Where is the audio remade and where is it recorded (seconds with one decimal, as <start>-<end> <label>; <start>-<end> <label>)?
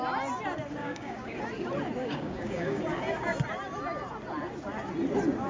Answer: 0.0-0.8 recorded; 0.8-1.4 remade; 1.4-2.0 recorded; 2.0-2.8 remade; 2.8-5.5 recorded